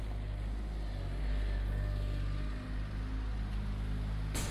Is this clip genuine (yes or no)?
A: yes